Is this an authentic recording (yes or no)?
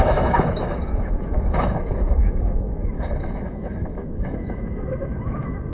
no